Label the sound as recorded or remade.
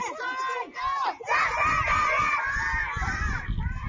recorded